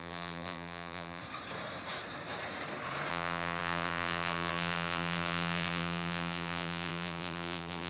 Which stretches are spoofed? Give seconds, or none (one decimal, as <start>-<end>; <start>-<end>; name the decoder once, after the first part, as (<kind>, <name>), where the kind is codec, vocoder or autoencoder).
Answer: 0.0-1.2 (vocoder, BigVGAN v2); 3.1-7.9